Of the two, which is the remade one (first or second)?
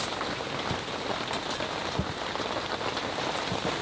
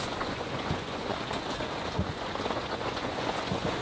second